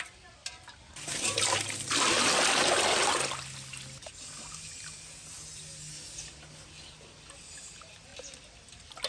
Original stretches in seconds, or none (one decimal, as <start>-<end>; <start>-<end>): 0.0-9.1